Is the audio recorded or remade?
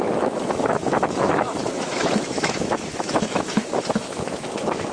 remade